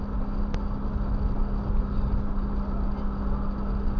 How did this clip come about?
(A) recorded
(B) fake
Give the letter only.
A